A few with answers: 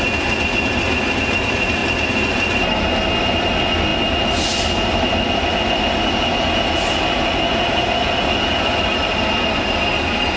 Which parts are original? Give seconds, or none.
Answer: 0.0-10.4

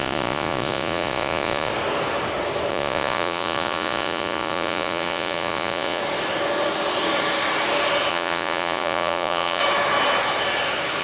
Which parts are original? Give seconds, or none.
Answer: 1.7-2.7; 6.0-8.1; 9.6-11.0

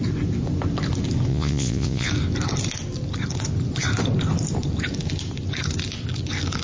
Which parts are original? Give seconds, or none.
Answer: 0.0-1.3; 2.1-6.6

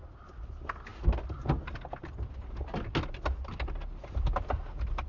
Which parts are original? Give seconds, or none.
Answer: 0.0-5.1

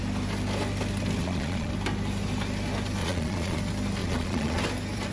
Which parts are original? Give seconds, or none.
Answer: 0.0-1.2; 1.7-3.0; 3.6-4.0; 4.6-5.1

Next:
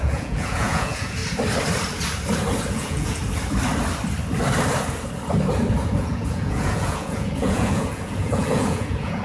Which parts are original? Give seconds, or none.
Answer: 1.2-2.7; 3.2-5.7

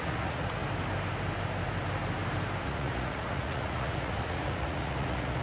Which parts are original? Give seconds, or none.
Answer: 0.6-2.6

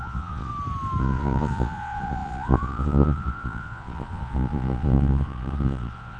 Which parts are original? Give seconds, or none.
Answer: 0.5-1.0